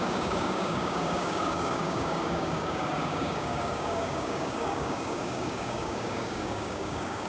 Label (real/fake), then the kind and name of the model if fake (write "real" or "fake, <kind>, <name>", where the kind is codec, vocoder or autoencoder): fake, codec, DAC